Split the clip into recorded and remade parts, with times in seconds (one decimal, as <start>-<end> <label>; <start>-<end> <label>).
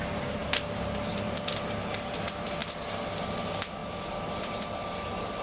0.0-5.4 recorded